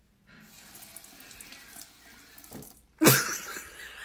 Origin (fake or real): real